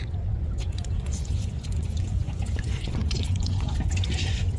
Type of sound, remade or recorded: remade